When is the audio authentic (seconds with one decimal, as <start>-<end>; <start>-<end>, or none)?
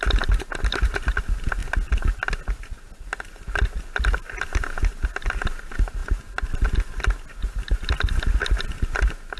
0.0-9.4